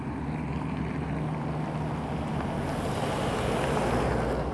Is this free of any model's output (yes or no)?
yes